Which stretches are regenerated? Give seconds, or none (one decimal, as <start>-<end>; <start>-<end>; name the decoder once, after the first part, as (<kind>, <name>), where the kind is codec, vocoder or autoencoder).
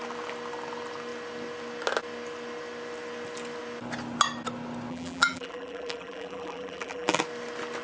4.9-7.2 (vocoder, BigVGAN v2)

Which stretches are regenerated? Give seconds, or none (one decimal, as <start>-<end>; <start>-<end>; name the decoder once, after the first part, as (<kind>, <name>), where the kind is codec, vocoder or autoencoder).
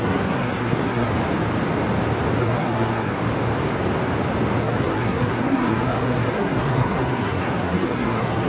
0.0-1.1 (codec, SNAC); 2.4-3.2; 4.6-8.5